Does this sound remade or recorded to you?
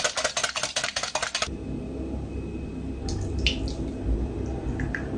recorded